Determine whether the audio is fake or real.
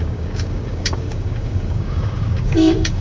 fake